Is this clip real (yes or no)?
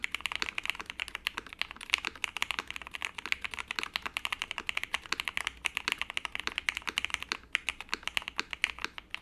yes